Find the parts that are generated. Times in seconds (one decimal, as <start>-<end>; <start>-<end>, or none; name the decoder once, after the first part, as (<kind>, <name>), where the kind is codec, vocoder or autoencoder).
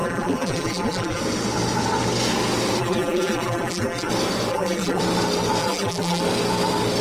0.0-1.2 (vocoder, BigVGAN v2); 2.8-4.1; 4.5-5.0; 5.6-6.2